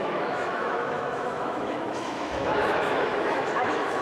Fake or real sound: fake